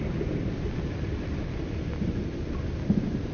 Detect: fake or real real